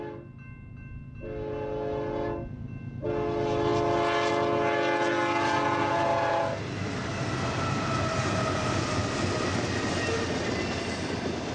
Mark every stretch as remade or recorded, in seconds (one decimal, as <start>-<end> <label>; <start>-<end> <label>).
0.0-11.5 recorded